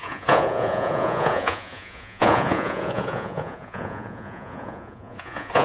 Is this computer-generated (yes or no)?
yes